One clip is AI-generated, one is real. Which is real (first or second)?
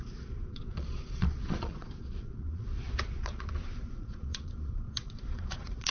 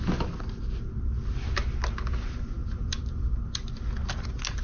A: second